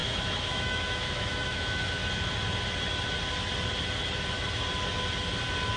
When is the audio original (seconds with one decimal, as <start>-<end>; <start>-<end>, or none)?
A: 2.0-5.8